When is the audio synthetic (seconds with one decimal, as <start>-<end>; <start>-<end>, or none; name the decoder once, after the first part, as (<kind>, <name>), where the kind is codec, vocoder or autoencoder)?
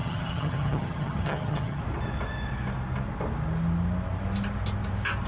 0.0-1.8 (vocoder, HiFi-GAN)